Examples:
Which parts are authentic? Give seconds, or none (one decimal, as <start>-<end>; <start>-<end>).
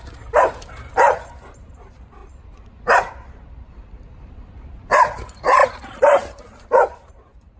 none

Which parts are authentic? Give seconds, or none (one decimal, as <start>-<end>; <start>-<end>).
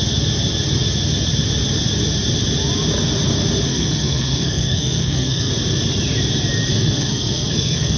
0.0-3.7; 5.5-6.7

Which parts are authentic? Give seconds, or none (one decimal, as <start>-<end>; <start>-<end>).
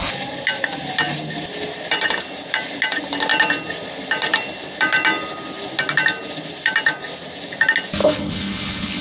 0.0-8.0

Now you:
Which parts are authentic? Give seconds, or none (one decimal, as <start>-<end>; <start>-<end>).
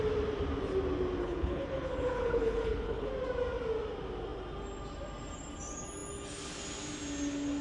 0.0-1.2; 3.1-7.6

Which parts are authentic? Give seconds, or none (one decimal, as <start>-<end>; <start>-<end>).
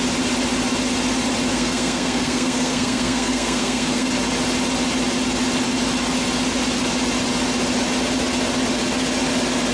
0.0-1.5; 4.1-9.7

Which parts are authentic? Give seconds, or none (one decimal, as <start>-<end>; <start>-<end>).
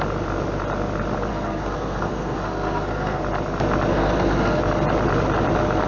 0.0-1.3; 3.2-3.9; 4.6-5.9